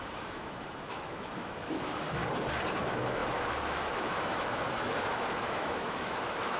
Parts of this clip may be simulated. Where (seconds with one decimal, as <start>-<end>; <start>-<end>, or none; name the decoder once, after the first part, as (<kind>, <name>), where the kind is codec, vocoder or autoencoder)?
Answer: 0.0-2.2 (autoencoder, DAC-VAE); 2.8-6.6